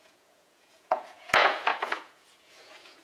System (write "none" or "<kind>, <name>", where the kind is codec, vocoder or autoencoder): vocoder, Vocos